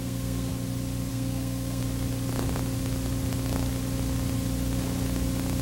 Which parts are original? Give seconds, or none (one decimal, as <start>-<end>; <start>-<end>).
0.5-1.1; 1.8-5.6